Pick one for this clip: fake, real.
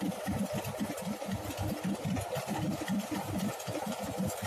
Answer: fake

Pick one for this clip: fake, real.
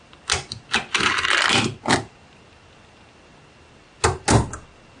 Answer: real